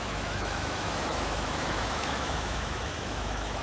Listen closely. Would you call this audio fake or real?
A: fake